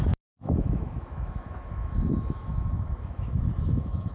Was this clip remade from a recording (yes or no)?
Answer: yes